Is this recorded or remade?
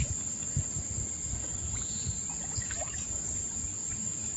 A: recorded